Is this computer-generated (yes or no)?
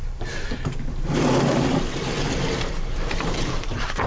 yes